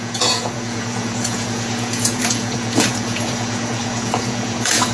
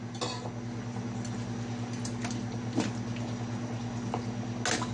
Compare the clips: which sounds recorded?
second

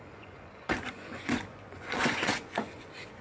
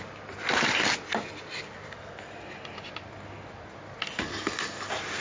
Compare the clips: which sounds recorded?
second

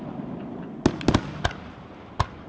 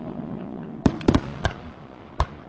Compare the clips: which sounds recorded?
first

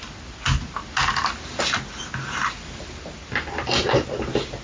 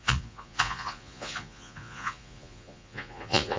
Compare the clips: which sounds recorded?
first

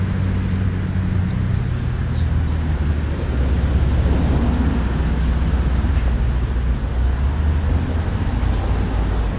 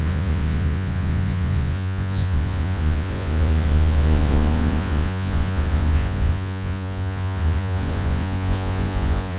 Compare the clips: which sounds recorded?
first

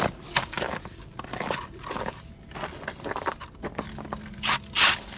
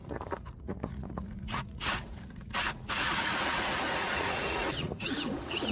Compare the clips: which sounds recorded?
first